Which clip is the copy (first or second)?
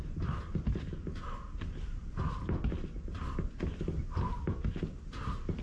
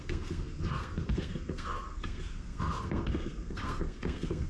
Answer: second